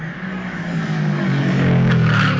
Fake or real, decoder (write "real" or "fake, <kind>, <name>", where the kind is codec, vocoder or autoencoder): fake, codec, DAC